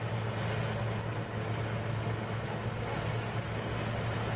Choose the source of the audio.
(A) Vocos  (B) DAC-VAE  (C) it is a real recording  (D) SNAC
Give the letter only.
C